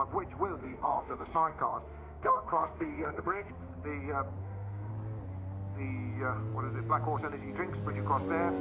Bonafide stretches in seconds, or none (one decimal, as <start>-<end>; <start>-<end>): 0.0-0.6; 3.5-4.4; 4.9-8.6

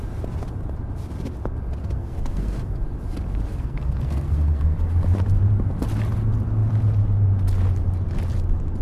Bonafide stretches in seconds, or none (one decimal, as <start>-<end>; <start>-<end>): 0.0-1.8; 2.8-3.5; 4.9-8.8